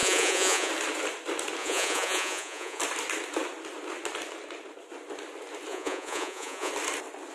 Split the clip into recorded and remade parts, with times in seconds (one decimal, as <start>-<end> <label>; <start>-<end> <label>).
0.0-0.7 remade; 0.7-1.6 recorded; 1.6-2.8 remade; 2.8-5.7 recorded; 5.7-6.7 remade; 6.7-7.3 recorded